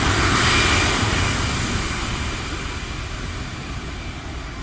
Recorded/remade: recorded